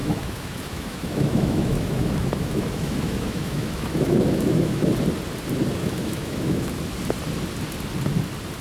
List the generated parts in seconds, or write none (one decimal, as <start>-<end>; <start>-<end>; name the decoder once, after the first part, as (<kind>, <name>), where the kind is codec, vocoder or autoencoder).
0.0-4.9 (autoencoder, DAC-VAE); 5.8-6.8